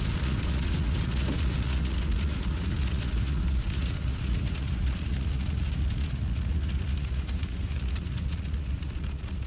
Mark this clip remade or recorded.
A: remade